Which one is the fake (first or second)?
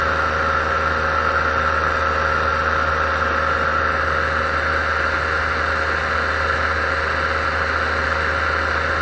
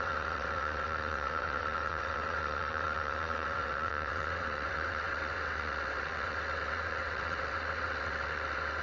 second